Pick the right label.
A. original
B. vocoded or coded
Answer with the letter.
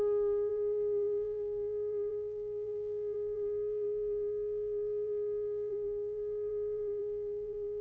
B